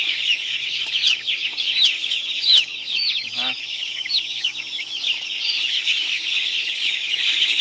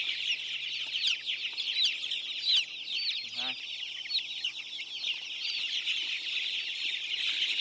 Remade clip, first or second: first